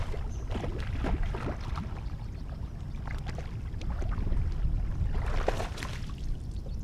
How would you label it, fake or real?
real